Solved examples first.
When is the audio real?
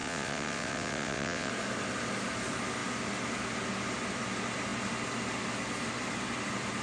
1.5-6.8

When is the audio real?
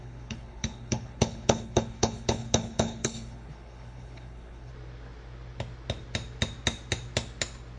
4.7-7.8